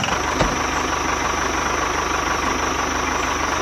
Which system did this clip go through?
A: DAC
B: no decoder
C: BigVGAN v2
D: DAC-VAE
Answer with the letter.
B